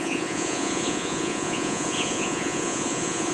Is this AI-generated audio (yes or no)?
yes